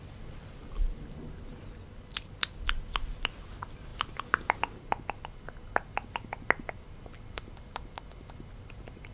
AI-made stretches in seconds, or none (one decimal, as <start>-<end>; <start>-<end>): none